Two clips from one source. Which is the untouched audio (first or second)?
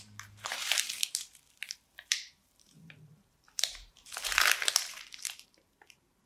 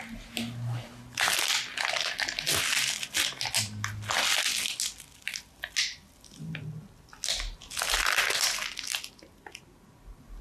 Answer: second